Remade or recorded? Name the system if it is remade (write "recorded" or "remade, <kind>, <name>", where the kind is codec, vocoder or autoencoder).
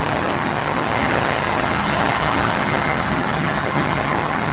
remade, vocoder, HiFi-GAN